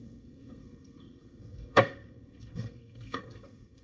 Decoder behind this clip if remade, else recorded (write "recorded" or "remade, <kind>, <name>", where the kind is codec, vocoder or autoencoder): remade, codec, SNAC